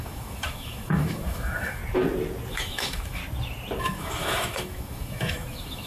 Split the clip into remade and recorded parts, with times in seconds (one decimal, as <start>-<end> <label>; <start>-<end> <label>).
0.0-1.8 remade; 1.8-2.5 recorded; 2.5-3.2 remade; 3.2-3.8 recorded; 3.8-5.9 remade